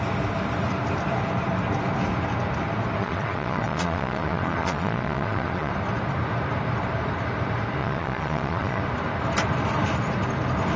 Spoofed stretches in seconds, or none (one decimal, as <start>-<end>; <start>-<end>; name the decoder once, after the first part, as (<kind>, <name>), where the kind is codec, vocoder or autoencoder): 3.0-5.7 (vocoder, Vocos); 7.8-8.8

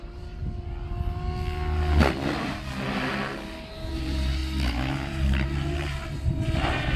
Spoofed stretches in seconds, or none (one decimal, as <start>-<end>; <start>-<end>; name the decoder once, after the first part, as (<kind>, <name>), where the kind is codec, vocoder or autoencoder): 0.0-0.4 (vocoder, BigVGAN v2); 3.9-4.4; 4.9-7.0

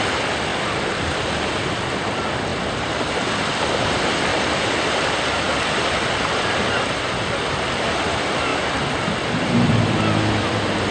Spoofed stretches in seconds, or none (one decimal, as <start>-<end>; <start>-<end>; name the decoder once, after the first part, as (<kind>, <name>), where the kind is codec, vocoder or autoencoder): 0.5-1.5 (vocoder, BigVGAN v2); 4.3-5.1; 8.5-10.9

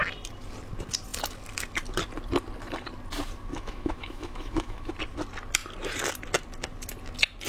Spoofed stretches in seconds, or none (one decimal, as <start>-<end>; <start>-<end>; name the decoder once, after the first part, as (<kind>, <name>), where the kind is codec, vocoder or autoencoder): 3.5-4.9 (autoencoder, DAC-VAE)

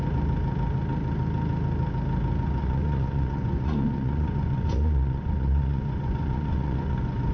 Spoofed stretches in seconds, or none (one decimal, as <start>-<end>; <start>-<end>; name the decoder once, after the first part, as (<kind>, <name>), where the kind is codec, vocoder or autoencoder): 2.6-7.3 (vocoder, Vocos)